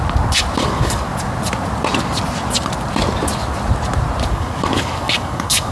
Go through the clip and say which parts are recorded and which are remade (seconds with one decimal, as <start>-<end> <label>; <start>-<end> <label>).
0.0-0.6 recorded; 0.6-1.1 remade; 1.1-4.3 recorded; 4.3-5.7 remade